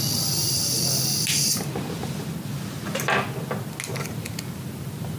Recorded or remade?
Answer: recorded